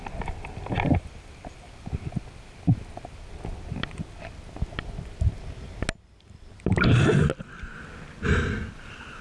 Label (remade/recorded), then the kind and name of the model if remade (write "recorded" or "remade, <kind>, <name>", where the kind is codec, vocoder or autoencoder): recorded